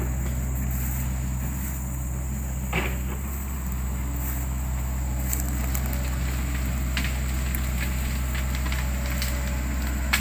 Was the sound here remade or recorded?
recorded